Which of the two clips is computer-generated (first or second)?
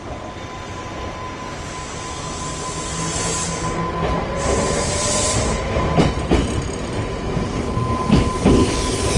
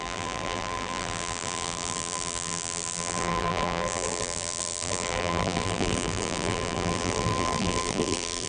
second